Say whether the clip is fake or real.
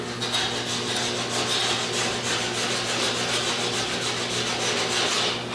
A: real